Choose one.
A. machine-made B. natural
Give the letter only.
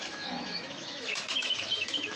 A